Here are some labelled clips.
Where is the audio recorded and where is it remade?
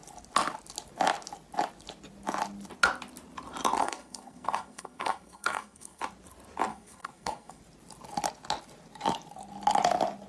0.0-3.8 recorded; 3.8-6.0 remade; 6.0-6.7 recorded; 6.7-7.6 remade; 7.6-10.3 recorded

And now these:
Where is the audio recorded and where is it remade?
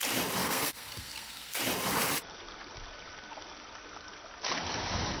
0.0-0.4 recorded; 0.4-1.6 remade; 1.6-5.2 recorded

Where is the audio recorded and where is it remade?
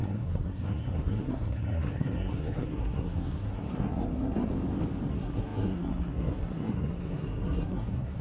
0.0-4.5 remade; 4.5-5.1 recorded; 5.1-8.2 remade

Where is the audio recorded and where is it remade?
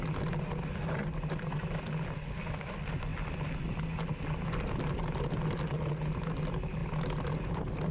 0.0-7.9 recorded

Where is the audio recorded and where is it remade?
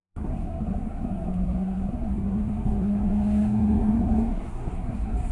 0.0-5.3 remade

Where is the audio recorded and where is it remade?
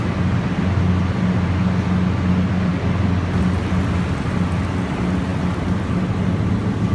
0.0-6.9 recorded